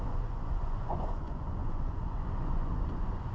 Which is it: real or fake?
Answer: fake